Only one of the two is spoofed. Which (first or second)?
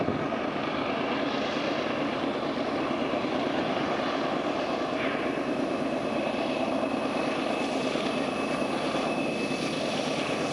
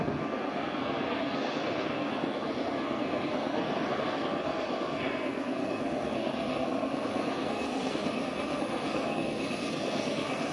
second